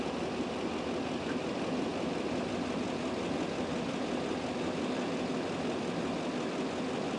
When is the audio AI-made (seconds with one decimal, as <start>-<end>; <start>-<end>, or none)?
none